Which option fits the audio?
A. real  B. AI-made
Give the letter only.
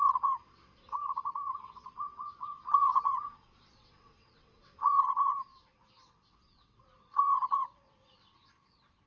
B